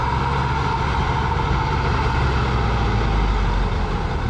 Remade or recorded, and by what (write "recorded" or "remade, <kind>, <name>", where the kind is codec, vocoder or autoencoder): recorded